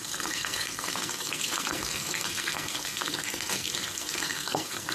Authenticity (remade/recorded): remade